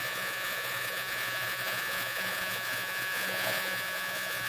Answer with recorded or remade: remade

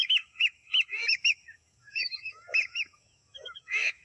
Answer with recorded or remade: remade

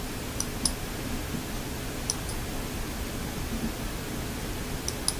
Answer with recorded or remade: recorded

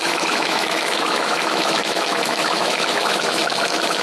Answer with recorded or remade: remade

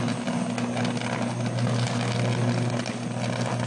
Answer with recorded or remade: recorded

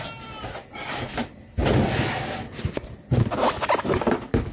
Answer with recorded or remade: recorded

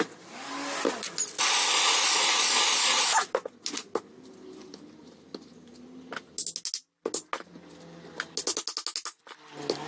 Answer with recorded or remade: recorded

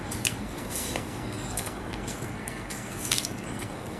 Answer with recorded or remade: remade